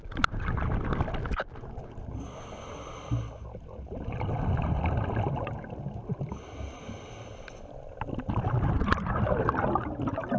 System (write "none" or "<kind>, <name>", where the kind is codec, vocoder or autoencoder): none